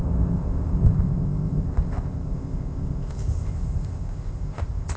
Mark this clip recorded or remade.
remade